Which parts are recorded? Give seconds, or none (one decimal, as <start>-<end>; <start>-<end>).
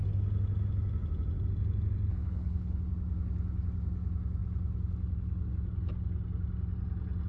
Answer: 0.0-2.1; 2.8-7.3